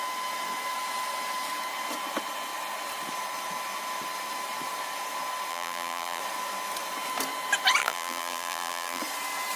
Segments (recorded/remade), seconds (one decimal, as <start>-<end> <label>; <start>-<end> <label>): 0.0-5.5 recorded; 5.5-6.2 remade; 6.2-7.8 recorded; 7.8-9.0 remade; 9.0-9.6 recorded